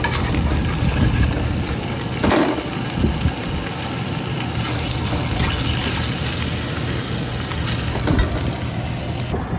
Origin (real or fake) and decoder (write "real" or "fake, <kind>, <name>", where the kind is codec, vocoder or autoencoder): real